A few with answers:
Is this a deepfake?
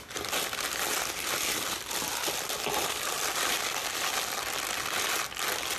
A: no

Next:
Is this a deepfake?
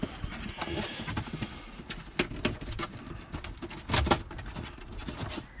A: no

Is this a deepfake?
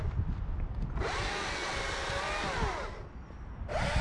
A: no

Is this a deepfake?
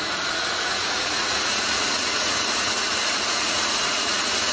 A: yes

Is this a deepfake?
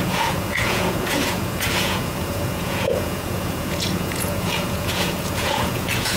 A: yes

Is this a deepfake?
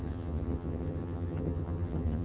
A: yes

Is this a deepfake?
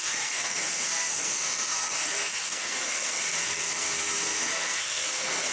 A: yes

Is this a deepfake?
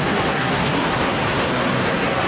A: yes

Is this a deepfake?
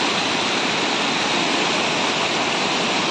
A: no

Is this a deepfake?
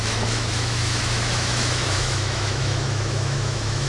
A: yes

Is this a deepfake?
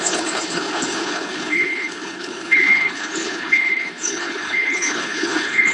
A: yes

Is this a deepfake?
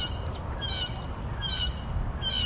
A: no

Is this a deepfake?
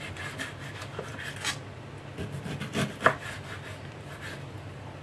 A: no